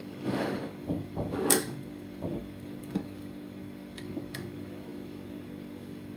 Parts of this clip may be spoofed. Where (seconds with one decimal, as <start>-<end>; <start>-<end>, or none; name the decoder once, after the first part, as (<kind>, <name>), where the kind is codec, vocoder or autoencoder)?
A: 0.0-6.2 (codec, DAC)